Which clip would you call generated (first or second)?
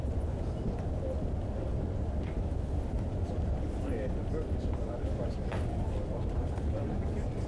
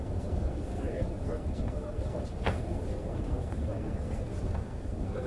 second